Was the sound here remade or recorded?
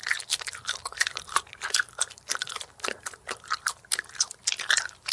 recorded